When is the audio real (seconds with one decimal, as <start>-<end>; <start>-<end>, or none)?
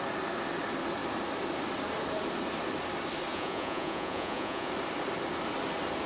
0.0-3.3; 4.7-6.1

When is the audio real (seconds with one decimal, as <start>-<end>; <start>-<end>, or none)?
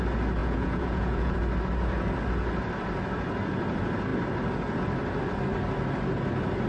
0.0-0.4; 1.4-6.7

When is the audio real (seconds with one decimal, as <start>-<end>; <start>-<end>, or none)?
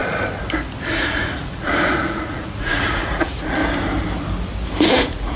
0.0-0.9; 3.6-4.9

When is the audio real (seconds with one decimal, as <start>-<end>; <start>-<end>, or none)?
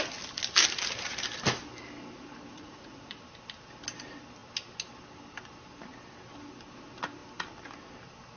0.0-2.5; 3.2-8.4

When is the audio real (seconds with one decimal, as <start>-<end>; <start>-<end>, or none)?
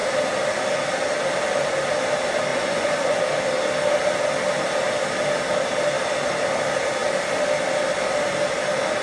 0.0-2.5; 3.2-9.0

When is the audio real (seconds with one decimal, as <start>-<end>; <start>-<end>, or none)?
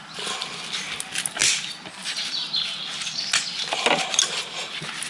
0.0-5.1